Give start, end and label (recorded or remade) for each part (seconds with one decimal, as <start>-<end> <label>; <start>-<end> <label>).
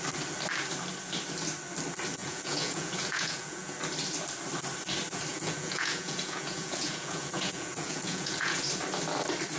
0.0-2.2 recorded; 2.2-3.7 remade; 3.7-5.3 recorded; 5.3-8.6 remade; 8.6-9.6 recorded